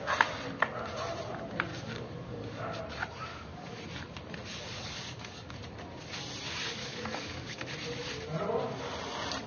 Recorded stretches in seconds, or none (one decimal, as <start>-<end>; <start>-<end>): 0.0-1.7; 2.8-3.3; 3.8-4.5; 5.6-6.8; 7.7-9.5